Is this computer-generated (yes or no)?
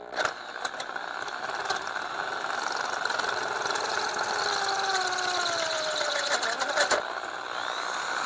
no